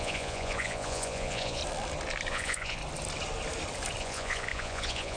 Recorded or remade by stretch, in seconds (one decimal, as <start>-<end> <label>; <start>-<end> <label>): 0.0-1.6 remade; 1.6-2.3 recorded; 2.3-2.8 remade; 2.8-4.0 recorded; 4.0-5.2 remade